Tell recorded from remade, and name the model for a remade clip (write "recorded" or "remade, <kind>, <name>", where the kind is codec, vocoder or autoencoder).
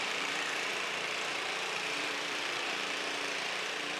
remade, vocoder, BigVGAN v2